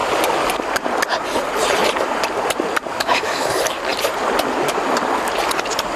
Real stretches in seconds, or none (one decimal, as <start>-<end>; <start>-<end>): 0.0-2.9; 3.5-6.0